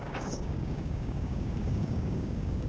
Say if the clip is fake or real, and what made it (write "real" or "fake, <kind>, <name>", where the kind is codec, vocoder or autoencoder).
fake, codec, DAC